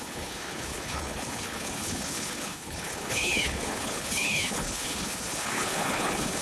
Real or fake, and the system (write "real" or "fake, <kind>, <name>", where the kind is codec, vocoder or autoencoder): fake, codec, HILCodec